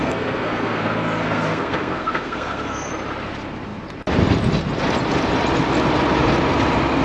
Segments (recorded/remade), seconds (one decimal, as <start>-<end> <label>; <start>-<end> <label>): 0.0-2.9 remade; 2.9-7.0 recorded